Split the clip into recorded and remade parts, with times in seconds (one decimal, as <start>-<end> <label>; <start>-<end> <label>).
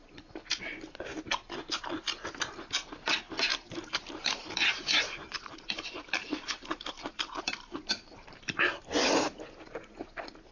0.0-3.5 recorded; 3.5-8.6 remade; 8.6-10.5 recorded